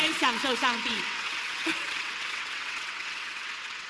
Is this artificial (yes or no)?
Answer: yes